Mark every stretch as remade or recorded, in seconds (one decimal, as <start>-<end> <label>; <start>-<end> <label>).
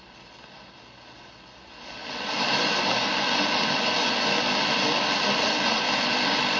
0.0-6.6 recorded